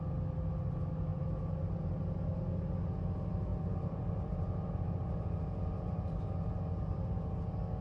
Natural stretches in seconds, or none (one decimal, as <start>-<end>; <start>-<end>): 0.0-1.1; 2.0-3.5; 7.3-7.8